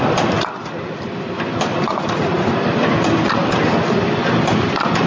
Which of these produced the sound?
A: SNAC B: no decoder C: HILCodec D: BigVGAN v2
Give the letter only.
D